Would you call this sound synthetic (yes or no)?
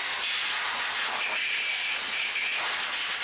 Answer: no